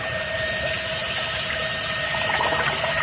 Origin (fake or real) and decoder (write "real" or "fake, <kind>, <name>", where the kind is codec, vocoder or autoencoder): fake, vocoder, BigVGAN v2